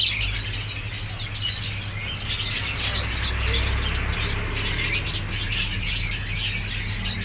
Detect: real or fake real